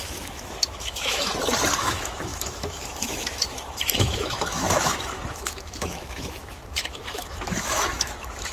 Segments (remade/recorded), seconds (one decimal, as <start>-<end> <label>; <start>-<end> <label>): 0.0-1.3 remade; 1.3-1.8 recorded; 1.8-8.5 remade